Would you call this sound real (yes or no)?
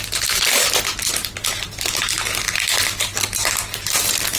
yes